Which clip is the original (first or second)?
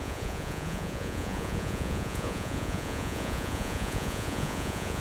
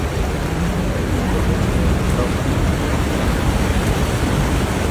second